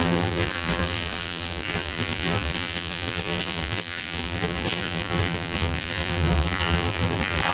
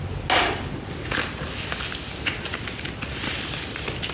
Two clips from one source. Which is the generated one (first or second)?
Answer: first